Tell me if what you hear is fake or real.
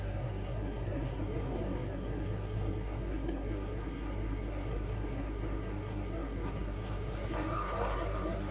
fake